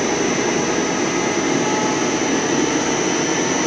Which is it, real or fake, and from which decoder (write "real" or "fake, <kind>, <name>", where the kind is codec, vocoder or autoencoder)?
real